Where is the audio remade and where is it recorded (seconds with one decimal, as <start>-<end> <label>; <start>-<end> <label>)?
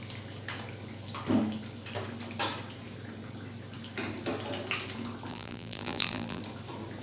0.0-5.3 recorded; 5.3-6.4 remade; 6.4-7.0 recorded